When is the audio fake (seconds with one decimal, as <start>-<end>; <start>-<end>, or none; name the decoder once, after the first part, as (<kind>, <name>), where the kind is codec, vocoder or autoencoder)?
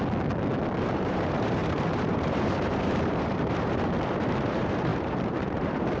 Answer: 0.8-6.0 (vocoder, BigVGAN v2)